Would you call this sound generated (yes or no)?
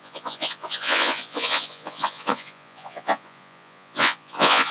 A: yes